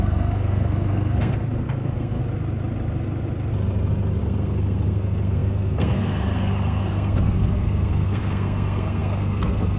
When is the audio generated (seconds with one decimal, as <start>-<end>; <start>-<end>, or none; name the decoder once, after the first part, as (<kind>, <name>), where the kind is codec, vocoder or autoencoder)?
0.0-2.2 (codec, SNAC); 4.2-9.8